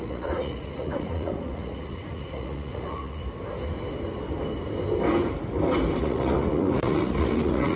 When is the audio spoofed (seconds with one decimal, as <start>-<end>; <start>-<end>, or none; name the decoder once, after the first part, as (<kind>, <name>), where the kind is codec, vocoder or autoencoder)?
0.0-3.2 (vocoder, Vocos); 6.0-7.8